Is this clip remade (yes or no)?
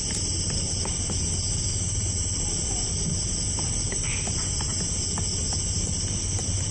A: no